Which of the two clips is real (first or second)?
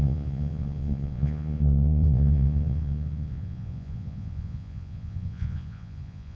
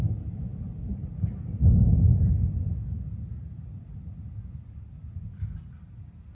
second